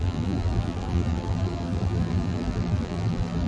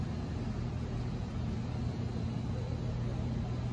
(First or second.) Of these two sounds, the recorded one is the second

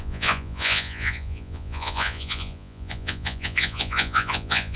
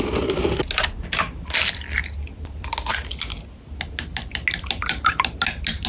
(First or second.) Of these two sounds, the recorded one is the second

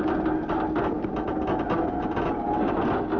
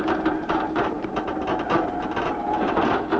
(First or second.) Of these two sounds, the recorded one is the first